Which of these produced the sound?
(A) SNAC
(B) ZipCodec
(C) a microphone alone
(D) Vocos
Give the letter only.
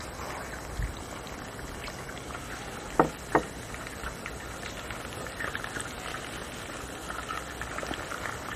C